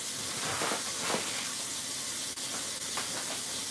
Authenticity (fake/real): real